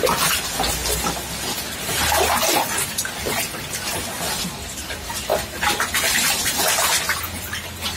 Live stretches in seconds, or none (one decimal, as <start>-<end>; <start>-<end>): 0.0-8.0